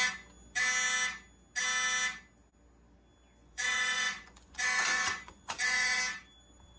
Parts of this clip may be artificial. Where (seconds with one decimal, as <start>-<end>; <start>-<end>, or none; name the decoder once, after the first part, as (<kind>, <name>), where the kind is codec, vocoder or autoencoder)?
3.4-6.0 (vocoder, Vocos)